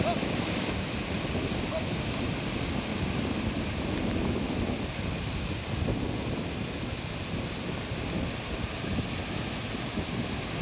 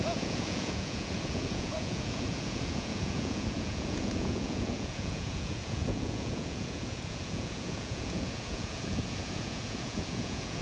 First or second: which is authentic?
first